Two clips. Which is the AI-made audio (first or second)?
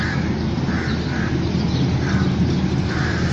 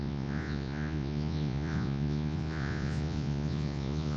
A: second